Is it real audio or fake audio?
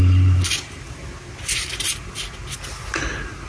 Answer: real